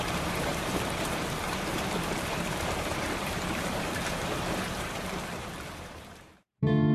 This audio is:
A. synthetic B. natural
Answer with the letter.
A